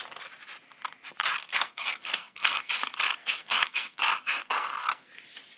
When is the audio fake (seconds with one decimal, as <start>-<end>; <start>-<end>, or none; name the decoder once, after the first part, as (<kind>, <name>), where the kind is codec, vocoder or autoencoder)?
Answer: 1.4-2.7 (codec, SNAC); 3.2-5.1